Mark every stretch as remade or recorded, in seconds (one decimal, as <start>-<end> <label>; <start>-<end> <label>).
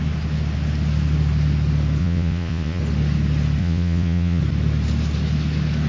0.0-2.0 recorded; 2.0-2.8 remade; 2.8-3.6 recorded; 3.6-4.4 remade; 4.4-5.9 recorded